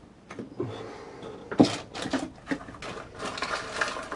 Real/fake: real